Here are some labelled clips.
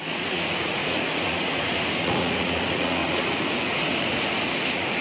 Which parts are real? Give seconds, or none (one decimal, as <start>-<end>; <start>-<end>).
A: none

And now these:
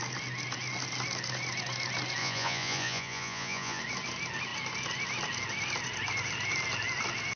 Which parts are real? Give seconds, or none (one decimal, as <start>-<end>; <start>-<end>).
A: 0.0-2.2; 3.8-7.4

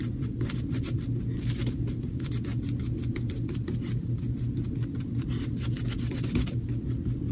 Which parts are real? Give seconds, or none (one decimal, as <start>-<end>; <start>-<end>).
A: 0.0-7.3